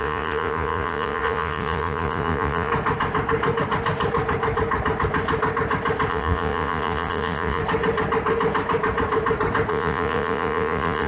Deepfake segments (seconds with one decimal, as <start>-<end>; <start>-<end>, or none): 0.0-2.7; 6.1-7.6; 9.7-11.1